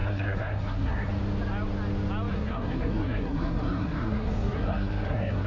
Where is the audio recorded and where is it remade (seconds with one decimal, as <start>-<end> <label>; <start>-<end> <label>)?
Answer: 0.0-1.1 remade; 1.1-2.3 recorded; 2.3-5.5 remade